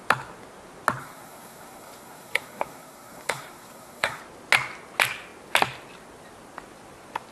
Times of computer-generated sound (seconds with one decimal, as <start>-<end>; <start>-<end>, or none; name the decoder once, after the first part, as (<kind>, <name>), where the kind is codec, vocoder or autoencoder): 1.0-4.2 (codec, SNAC)